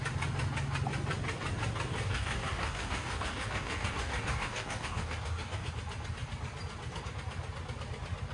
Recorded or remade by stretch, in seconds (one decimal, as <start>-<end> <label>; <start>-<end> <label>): 0.0-1.9 recorded; 1.9-5.7 remade; 5.7-8.3 recorded

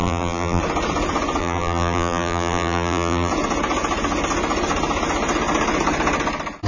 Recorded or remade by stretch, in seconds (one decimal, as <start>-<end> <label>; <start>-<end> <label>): 0.0-0.6 remade; 0.6-1.4 recorded; 1.4-3.3 remade; 3.3-6.7 recorded

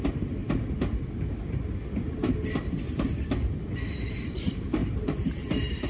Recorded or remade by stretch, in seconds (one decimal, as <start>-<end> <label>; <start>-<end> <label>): 0.0-0.4 remade; 0.4-3.9 recorded; 3.9-5.9 remade

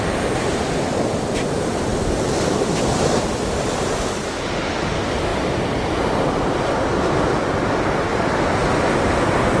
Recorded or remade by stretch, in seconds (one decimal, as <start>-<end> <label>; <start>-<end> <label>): 0.0-1.9 recorded; 1.9-4.7 remade; 4.7-5.3 recorded; 5.3-6.1 remade; 6.1-9.6 recorded

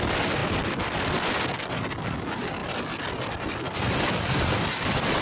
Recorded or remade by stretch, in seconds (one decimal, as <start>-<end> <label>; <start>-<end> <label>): 0.0-0.4 recorded; 0.4-1.2 remade; 1.2-2.6 recorded; 2.6-3.8 remade; 3.8-5.2 recorded

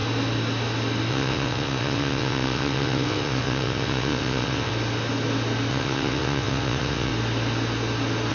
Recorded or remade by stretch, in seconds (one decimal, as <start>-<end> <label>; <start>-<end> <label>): 0.0-1.1 recorded; 1.1-4.7 remade; 4.7-5.7 recorded; 5.7-7.1 remade; 7.1-8.3 recorded

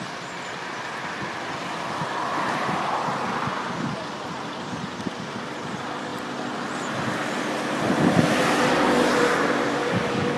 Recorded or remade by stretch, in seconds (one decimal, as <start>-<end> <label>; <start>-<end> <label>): 0.0-9.8 recorded; 9.8-10.4 remade